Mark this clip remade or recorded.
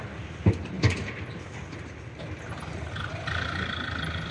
recorded